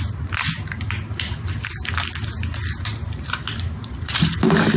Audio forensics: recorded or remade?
recorded